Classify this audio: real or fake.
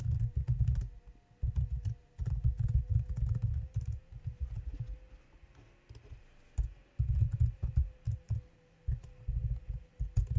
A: real